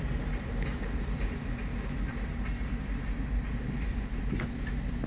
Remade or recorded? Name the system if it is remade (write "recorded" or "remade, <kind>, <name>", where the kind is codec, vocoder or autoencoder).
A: recorded